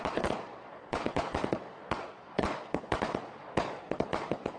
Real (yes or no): no